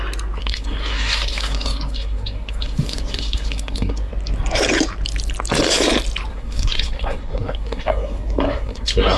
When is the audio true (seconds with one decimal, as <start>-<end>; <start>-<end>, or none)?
0.0-0.4; 4.1-6.3